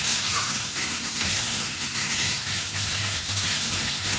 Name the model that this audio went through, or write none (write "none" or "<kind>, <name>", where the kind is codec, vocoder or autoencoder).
codec, SNAC